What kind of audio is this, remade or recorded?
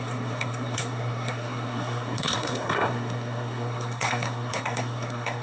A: remade